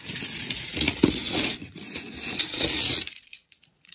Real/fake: fake